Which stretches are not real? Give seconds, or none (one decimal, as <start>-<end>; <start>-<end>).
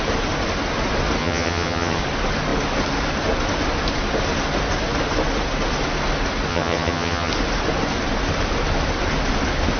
1.2-2.0; 6.5-7.3